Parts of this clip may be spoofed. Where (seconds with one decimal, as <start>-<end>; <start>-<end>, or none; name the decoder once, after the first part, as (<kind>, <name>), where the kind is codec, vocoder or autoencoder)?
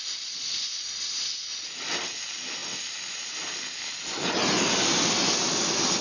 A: none